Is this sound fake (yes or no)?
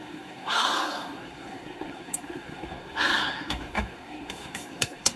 yes